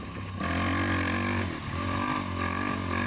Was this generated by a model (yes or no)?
no